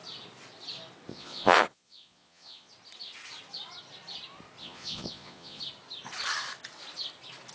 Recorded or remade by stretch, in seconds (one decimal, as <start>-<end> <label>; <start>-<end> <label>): 0.0-1.1 recorded; 1.1-2.7 remade; 2.7-4.6 recorded; 4.6-5.6 remade; 5.6-7.5 recorded

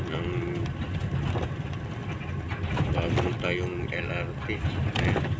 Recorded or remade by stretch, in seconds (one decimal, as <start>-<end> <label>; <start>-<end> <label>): 0.0-5.4 recorded